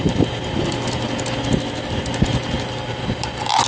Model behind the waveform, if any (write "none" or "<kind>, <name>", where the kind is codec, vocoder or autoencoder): none